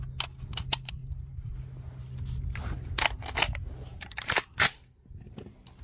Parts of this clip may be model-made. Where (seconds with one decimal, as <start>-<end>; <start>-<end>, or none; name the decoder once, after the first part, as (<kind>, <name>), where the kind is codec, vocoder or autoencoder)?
1.0-1.5 (vocoder, BigVGAN v2); 3.9-4.5

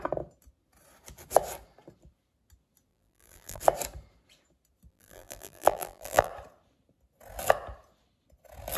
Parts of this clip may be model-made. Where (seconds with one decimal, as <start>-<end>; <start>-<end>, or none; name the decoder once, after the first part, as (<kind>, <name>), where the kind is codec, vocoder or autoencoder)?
2.9-3.6 (vocoder, BigVGAN v2); 4.9-6.3

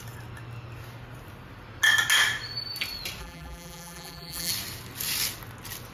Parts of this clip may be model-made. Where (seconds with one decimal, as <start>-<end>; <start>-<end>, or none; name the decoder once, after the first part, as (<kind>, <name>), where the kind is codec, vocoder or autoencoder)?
3.2-4.5 (vocoder, BigVGAN v2)

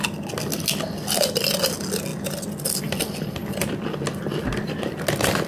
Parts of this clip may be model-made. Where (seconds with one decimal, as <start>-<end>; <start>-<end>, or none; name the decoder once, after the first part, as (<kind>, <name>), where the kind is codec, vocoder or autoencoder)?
none

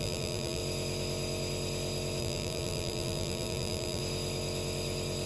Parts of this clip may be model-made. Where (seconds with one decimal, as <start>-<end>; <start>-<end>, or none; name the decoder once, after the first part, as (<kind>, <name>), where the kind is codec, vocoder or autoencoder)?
0.0-0.6 (vocoder, BigVGAN v2); 2.2-4.0